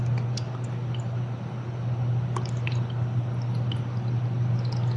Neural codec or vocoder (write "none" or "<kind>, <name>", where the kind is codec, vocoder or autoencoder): none